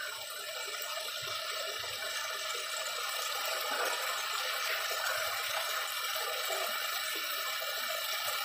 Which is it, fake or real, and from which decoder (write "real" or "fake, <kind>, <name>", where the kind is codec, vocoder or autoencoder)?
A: real